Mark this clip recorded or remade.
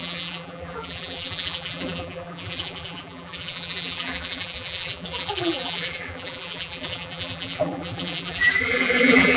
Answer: remade